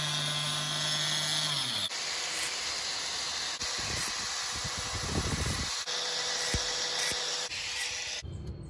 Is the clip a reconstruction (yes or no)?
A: no